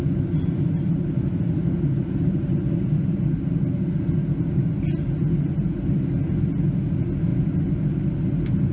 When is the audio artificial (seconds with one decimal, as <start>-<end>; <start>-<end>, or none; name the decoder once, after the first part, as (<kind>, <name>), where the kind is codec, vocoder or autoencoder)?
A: none